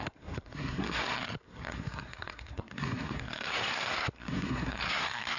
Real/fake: fake